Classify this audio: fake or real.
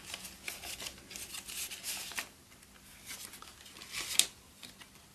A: real